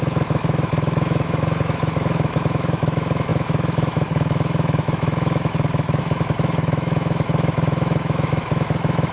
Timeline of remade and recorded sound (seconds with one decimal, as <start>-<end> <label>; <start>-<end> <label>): 0.0-9.1 remade